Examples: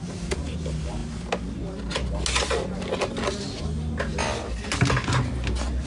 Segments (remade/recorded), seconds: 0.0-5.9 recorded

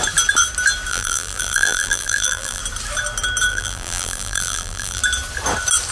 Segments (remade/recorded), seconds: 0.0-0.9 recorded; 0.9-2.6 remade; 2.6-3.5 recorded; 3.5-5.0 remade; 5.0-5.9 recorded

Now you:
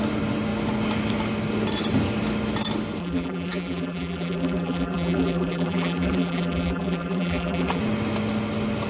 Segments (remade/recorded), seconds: 0.0-3.0 recorded; 3.0-7.8 remade; 7.8-8.9 recorded

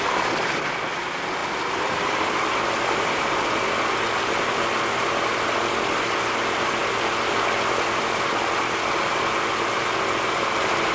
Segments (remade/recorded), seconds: 0.0-1.4 recorded; 1.4-3.7 remade; 3.7-6.8 recorded; 6.8-7.6 remade; 7.6-10.9 recorded